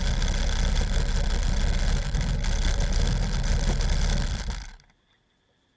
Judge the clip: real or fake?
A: real